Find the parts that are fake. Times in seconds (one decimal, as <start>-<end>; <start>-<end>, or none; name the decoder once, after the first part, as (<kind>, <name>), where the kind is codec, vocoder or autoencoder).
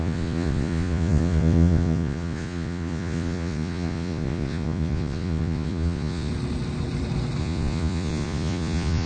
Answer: 0.0-6.3 (vocoder, Vocos); 7.4-9.1